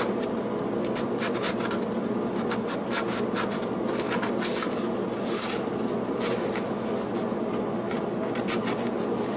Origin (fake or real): real